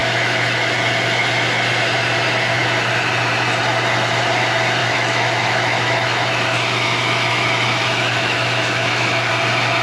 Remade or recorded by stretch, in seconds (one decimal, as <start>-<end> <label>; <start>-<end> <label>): 0.0-0.6 remade; 0.6-4.8 recorded; 4.8-9.3 remade; 9.3-9.8 recorded